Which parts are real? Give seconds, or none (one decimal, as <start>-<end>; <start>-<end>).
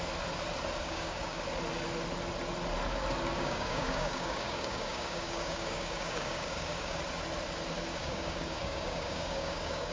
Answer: 0.0-0.8; 1.4-3.3; 7.0-7.9